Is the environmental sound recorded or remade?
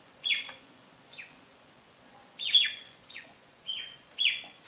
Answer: remade